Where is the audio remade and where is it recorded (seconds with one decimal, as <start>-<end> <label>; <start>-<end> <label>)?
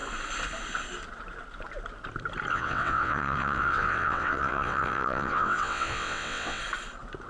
0.0-2.5 recorded; 2.5-6.6 remade; 6.6-7.3 recorded